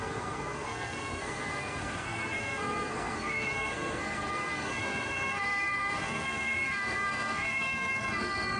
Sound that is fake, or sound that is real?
fake